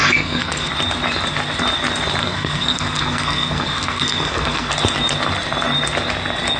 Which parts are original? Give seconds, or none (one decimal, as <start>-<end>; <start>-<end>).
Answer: 0.7-2.2; 4.7-6.6